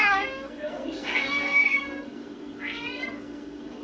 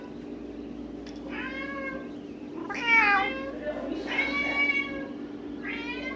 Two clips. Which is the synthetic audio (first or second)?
first